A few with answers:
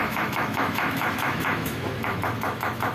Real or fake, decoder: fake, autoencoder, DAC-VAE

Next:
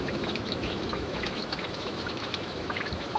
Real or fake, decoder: fake, autoencoder, DAC-VAE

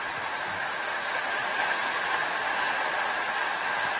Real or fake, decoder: real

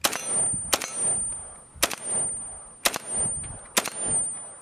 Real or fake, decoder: real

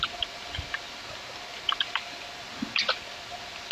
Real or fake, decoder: real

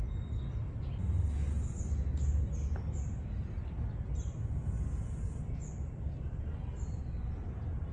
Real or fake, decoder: real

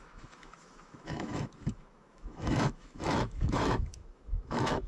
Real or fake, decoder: fake, autoencoder, DAC-VAE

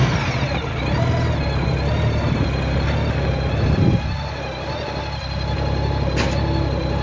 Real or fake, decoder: real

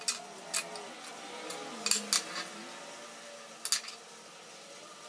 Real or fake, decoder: real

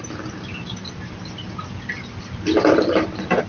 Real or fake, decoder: real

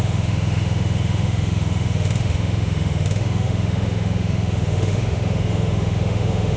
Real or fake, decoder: fake, autoencoder, DAC-VAE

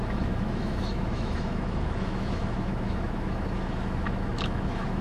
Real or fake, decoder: fake, autoencoder, DAC-VAE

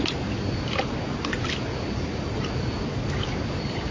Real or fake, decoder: real